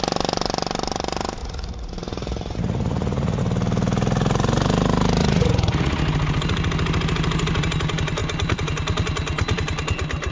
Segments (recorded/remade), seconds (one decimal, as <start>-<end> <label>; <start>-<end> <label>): 0.0-1.4 recorded; 1.4-3.4 remade; 3.4-5.2 recorded; 5.2-6.0 remade; 6.0-10.3 recorded